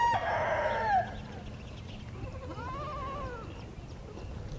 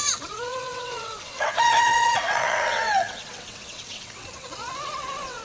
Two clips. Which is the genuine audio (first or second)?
first